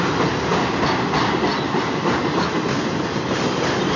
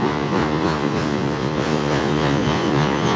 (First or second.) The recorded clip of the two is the first